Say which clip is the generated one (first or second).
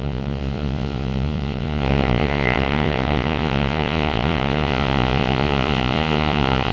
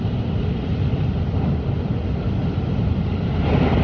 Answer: first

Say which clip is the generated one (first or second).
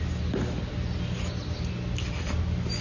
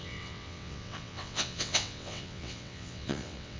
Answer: second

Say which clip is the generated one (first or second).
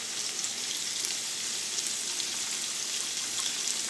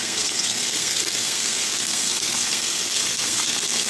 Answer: second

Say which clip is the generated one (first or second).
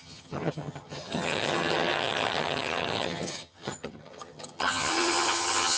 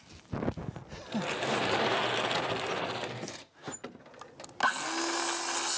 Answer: first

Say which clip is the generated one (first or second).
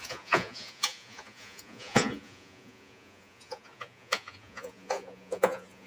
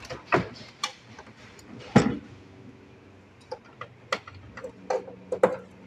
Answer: first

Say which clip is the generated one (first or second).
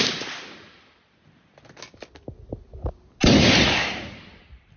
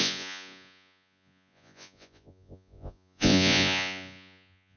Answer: second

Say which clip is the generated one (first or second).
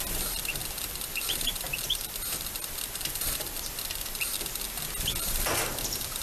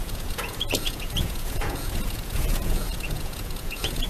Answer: second